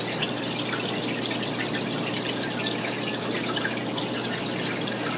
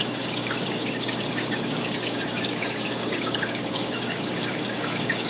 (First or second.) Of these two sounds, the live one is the first